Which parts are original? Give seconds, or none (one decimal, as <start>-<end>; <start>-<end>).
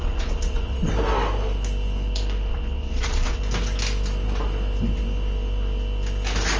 0.9-2.5; 3.4-6.6